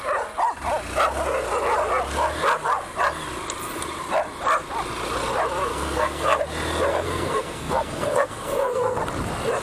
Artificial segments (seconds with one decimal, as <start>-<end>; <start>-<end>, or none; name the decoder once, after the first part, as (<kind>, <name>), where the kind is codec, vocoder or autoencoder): 5.7-6.4 (codec, SNAC); 6.9-9.0